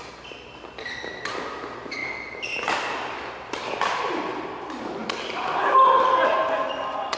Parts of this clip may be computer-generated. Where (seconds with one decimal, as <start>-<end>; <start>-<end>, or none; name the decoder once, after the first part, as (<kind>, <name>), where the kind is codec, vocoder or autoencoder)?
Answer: 2.0-6.3 (vocoder, BigVGAN v2)